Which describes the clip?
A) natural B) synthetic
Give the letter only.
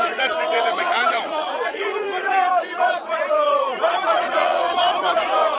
B